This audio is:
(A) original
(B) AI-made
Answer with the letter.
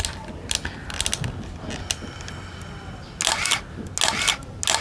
A